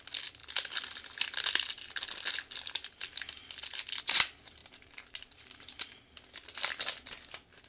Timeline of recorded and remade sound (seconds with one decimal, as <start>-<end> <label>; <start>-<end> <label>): 0.0-4.6 recorded; 4.6-6.0 remade; 6.0-7.7 recorded